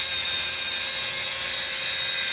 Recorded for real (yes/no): yes